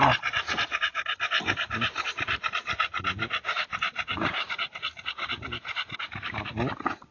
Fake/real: real